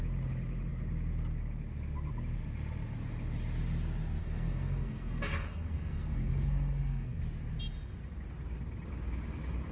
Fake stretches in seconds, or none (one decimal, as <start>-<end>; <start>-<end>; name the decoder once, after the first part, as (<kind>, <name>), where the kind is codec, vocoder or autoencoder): 4.2-7.2 (codec, SNAC)